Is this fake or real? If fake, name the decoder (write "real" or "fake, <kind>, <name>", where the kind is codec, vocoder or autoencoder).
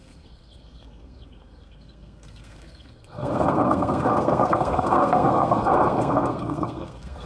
fake, codec, SNAC